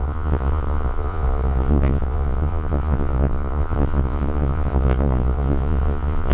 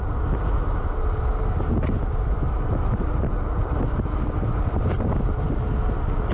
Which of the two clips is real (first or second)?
second